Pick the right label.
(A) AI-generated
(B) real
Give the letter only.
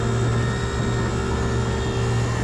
B